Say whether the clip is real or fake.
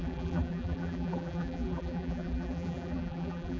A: fake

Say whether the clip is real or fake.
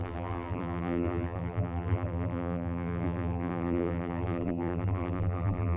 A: fake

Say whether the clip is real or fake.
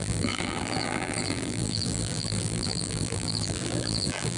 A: fake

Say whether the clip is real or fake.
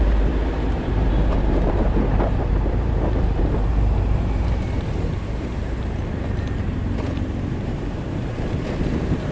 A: fake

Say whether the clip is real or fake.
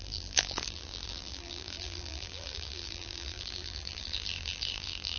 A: fake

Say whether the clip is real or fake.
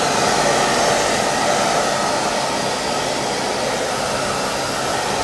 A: real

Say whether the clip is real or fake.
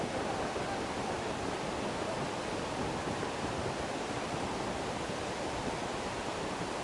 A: fake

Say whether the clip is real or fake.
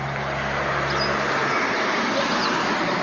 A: real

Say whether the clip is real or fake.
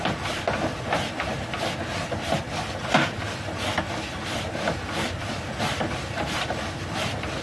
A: real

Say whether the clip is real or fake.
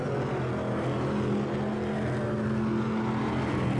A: real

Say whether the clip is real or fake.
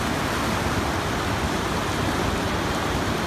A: real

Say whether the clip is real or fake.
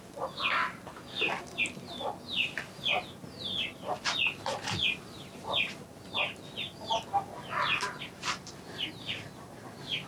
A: real